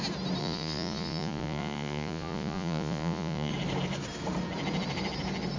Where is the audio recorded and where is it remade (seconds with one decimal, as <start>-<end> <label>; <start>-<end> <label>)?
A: 0.0-0.4 recorded; 0.4-3.5 remade; 3.5-5.6 recorded